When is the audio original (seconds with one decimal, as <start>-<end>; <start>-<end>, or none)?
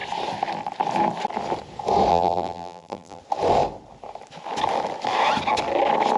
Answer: 0.0-2.1; 3.2-6.2